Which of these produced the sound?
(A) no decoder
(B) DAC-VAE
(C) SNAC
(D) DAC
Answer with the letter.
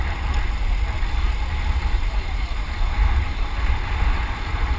A